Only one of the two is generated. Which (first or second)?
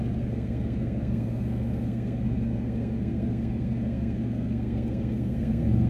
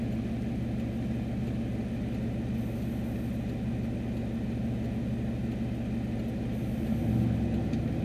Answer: first